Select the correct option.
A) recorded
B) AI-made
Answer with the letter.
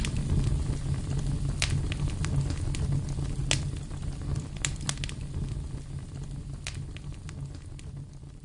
A